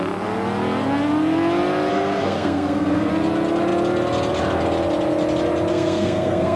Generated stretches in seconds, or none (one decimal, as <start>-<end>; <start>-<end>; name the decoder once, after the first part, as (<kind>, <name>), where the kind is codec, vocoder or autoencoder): 1.9-3.1 (codec, SNAC); 5.7-6.6